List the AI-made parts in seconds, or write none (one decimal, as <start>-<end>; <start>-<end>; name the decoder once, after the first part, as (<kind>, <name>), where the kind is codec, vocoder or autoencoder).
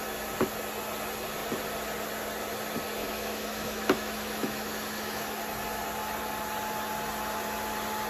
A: 3.0-5.4 (autoencoder, DAC-VAE)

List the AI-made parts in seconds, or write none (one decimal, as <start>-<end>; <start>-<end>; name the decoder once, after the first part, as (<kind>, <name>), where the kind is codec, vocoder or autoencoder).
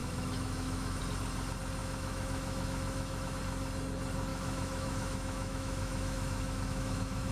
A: 0.0-1.0 (autoencoder, DAC-VAE); 1.8-3.4; 4.3-7.3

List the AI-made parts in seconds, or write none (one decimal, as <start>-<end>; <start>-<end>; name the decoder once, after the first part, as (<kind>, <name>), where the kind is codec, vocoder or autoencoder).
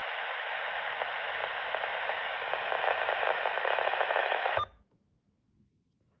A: 0.0-0.5 (autoencoder, DAC-VAE); 4.2-6.2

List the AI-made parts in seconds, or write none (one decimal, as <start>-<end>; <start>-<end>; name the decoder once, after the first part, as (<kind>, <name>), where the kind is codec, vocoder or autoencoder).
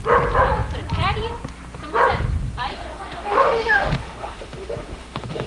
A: 2.7-5.5 (autoencoder, DAC-VAE)